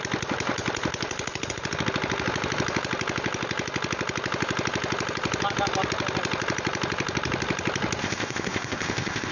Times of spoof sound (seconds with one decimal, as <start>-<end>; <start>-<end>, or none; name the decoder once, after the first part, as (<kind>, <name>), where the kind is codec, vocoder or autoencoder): 8.0-9.3 (codec, ZipCodec)